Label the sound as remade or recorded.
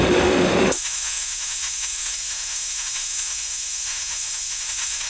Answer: remade